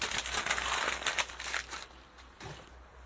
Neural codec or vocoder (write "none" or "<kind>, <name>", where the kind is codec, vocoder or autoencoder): none